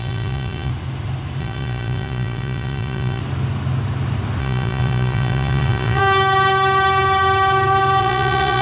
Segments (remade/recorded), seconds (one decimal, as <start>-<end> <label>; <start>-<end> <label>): 0.0-0.7 remade; 0.7-1.4 recorded; 1.4-3.2 remade; 3.2-4.4 recorded; 4.4-6.0 remade; 6.0-8.0 recorded; 8.0-8.6 remade